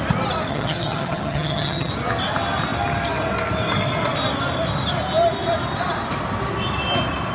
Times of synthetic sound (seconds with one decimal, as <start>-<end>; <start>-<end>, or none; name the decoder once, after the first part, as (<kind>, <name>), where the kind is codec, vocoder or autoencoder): 0.5-1.9 (vocoder, HiFi-GAN)